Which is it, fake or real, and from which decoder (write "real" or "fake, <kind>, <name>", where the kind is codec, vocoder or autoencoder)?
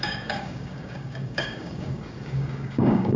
fake, codec, DAC